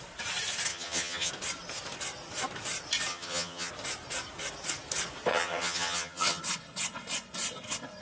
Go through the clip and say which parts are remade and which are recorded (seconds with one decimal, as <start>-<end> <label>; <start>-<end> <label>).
0.0-0.7 recorded; 0.7-1.3 remade; 1.3-3.1 recorded; 3.1-3.7 remade; 3.7-5.3 recorded; 5.3-6.4 remade; 6.4-8.0 recorded